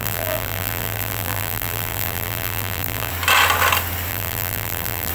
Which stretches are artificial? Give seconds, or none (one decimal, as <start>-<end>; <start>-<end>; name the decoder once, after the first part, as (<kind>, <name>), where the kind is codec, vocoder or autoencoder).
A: 0.0-3.1 (vocoder, BigVGAN v2); 4.1-5.1